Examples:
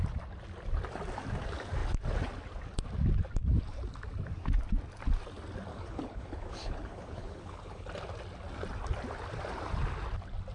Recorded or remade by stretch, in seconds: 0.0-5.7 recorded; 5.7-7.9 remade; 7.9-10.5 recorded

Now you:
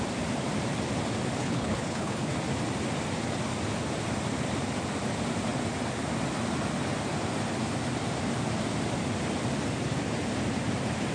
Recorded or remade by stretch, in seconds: 0.0-1.4 recorded; 1.4-2.3 remade; 2.3-11.1 recorded